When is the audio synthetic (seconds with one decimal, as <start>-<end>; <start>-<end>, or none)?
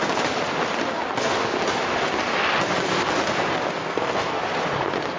3.8-4.4